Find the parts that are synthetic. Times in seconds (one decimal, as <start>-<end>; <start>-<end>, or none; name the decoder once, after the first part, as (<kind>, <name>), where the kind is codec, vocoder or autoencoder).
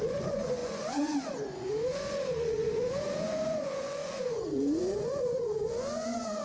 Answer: 0.0-6.4 (vocoder, Vocos)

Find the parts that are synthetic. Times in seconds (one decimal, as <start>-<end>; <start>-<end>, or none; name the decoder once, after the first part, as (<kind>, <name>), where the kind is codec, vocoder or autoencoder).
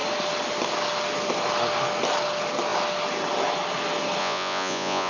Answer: 4.2-5.1 (vocoder, Vocos)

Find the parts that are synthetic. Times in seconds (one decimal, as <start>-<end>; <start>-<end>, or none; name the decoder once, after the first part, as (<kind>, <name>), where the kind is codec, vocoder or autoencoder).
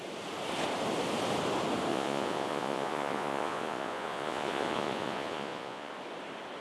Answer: 1.9-5.9 (vocoder, Vocos)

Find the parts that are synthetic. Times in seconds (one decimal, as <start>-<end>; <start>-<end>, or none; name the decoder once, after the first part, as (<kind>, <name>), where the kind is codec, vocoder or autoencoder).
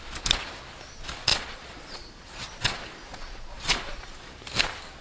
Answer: 1.3-4.3 (vocoder, Vocos)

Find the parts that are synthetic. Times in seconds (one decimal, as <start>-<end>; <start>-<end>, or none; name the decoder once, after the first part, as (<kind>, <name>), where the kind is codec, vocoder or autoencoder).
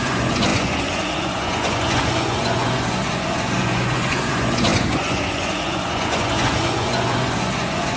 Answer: 0.0-8.0 (vocoder, Vocos)